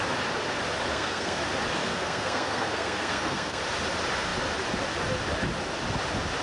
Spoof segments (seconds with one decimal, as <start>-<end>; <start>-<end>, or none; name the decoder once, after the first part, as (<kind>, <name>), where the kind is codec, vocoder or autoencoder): 0.9-1.4 (codec, SNAC); 1.8-3.6